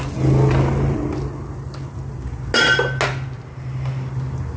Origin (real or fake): real